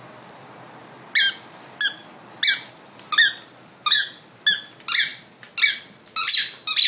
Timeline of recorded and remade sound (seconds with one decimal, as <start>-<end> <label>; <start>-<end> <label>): 0.0-6.9 recorded